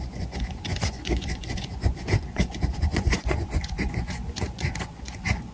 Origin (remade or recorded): remade